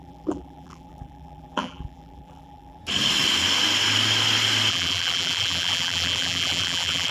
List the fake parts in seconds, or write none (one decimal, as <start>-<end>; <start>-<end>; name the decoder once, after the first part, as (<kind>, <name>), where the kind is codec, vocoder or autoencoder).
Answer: 0.0-2.8 (vocoder, BigVGAN v2); 4.7-7.1

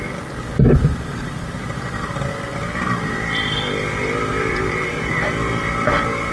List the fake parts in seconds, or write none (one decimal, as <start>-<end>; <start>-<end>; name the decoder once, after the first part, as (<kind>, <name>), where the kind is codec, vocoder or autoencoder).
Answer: 0.5-2.3 (vocoder, BigVGAN v2); 4.3-5.1

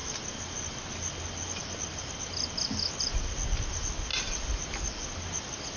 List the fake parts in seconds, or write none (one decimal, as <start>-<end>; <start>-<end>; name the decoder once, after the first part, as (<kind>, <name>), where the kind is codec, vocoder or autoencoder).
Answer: 4.1-4.9 (vocoder, BigVGAN v2)